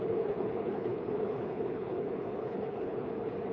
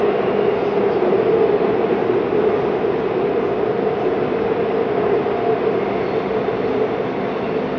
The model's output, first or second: first